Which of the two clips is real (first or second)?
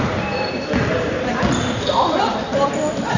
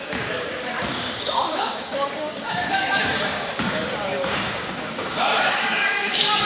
first